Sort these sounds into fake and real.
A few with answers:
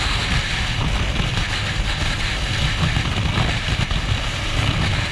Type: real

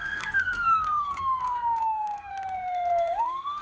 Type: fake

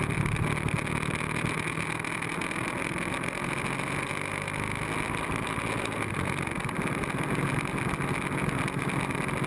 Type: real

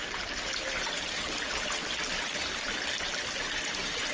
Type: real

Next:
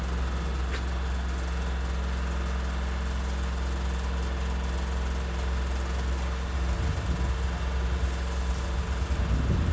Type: real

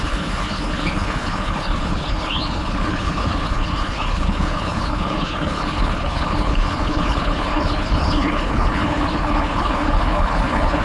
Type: fake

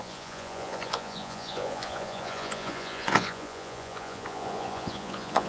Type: fake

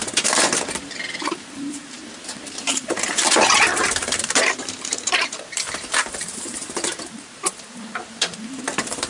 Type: fake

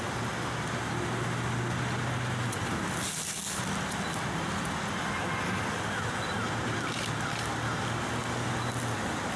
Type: real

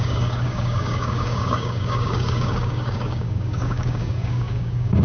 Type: fake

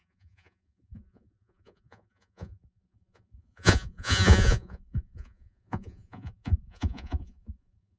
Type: fake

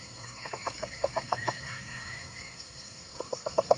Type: fake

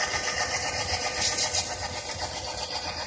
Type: fake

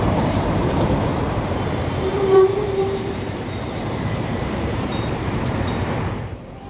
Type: fake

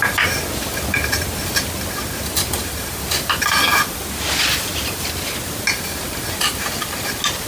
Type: real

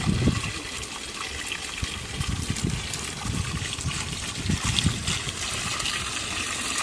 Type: real